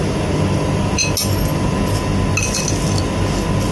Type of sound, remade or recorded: recorded